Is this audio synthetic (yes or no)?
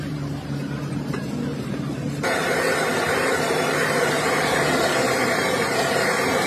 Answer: yes